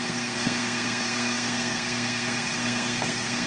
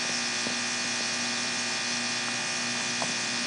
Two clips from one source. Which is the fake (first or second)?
first